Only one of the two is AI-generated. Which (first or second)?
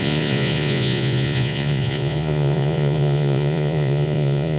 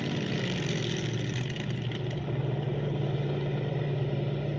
first